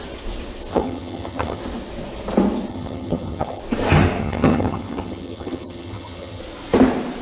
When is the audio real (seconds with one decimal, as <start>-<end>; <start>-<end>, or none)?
0.0-0.7; 1.6-2.7; 3.6-4.2; 6.4-7.2